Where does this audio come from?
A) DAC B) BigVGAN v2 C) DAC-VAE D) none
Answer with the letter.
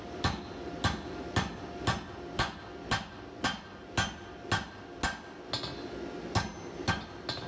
D